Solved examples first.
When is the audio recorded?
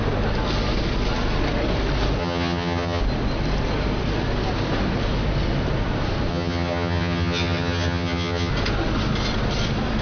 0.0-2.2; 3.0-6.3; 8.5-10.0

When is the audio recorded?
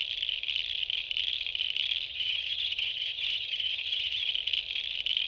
0.0-2.1; 4.3-5.3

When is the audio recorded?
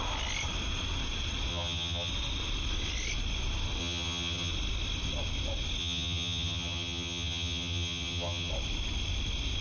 0.0-1.5; 2.1-3.8; 4.5-5.8; 8.5-9.6